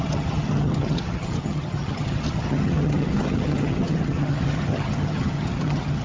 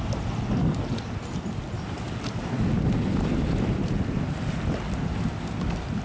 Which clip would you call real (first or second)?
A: second